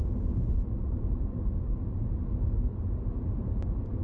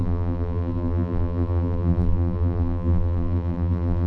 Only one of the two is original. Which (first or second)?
first